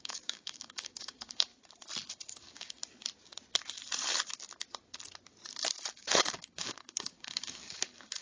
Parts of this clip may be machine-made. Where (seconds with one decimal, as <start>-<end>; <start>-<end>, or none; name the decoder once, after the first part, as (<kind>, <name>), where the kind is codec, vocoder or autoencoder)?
0.0-1.5 (codec, DAC); 2.1-2.8; 5.9-8.2